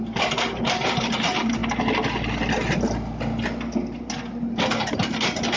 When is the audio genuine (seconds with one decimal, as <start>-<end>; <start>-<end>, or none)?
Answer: 1.6-4.8

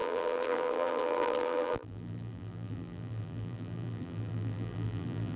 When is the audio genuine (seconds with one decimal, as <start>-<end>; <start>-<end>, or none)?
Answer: none

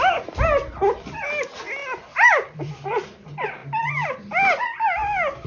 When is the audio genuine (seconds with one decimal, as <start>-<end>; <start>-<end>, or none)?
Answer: 0.0-1.8; 2.7-3.6; 4.3-5.5

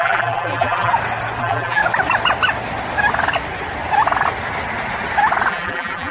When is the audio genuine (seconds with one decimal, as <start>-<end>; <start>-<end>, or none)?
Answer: 0.9-1.4; 1.8-5.5

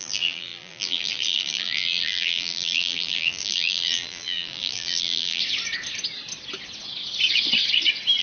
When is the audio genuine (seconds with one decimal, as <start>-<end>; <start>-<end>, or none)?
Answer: 5.4-8.2

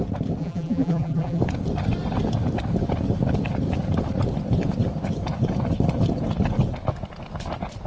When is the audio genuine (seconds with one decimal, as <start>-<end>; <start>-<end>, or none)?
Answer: 0.0-0.4; 1.4-7.9

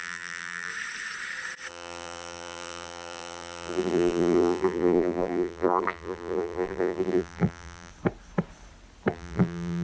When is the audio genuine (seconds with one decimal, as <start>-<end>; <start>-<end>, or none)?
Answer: 0.7-1.7; 7.9-9.1